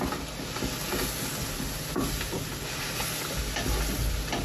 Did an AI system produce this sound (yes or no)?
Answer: no